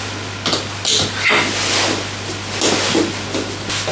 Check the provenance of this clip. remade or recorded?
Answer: recorded